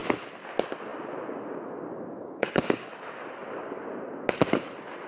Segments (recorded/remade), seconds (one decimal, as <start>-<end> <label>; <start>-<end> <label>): 0.0-2.2 recorded; 2.2-2.9 remade; 2.9-5.1 recorded